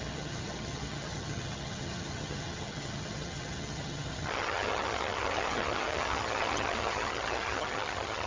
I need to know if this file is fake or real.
fake